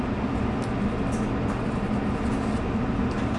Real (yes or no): yes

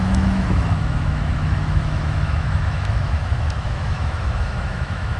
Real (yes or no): no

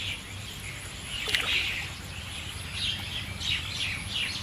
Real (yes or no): yes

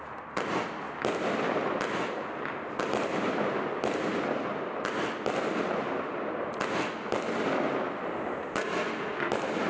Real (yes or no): yes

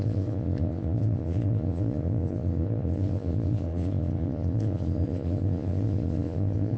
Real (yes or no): no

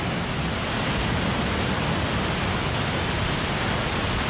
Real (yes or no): yes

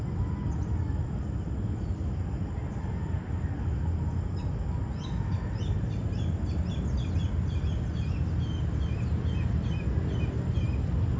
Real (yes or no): yes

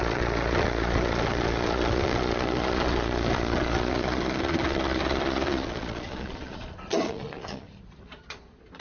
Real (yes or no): no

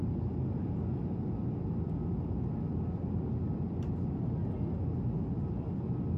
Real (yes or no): yes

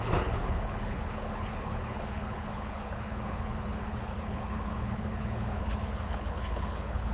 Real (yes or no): no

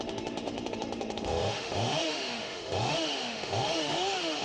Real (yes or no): no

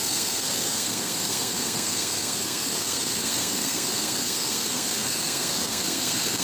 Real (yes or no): no